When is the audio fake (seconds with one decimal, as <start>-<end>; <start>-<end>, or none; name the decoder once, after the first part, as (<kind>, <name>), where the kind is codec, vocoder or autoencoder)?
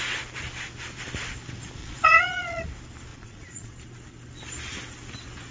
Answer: 1.8-2.7 (vocoder, Vocos); 3.1-3.7